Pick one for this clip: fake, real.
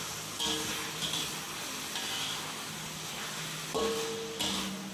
real